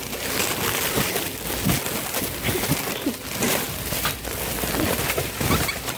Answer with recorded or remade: recorded